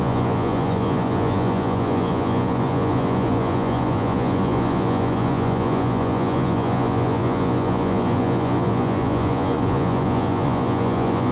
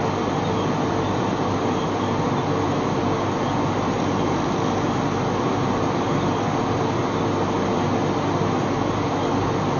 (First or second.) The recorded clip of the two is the second